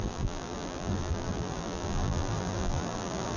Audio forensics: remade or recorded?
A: remade